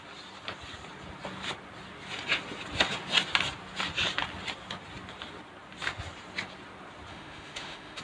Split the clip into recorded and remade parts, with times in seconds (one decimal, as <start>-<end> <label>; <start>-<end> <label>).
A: 0.0-7.1 recorded; 7.1-8.0 remade